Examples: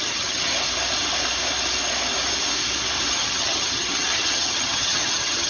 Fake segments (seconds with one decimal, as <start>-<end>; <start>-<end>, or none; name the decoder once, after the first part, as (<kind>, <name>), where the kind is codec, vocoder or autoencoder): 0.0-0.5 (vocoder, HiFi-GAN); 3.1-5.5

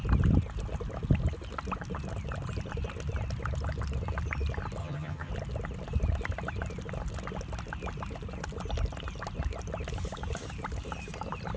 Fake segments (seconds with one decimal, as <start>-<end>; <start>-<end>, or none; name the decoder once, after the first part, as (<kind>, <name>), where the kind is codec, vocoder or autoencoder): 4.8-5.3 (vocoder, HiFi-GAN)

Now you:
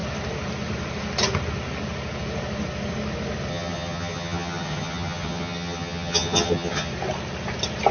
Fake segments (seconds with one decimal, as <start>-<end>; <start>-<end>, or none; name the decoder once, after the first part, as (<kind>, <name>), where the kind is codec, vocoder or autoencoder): 3.5-6.9 (vocoder, HiFi-GAN)